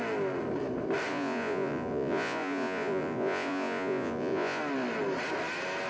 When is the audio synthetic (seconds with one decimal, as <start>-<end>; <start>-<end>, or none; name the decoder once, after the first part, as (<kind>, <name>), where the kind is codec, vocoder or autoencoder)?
1.1-4.6 (vocoder, Vocos)